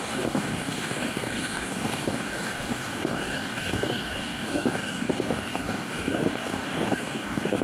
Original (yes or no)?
no